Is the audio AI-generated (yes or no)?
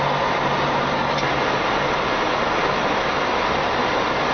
no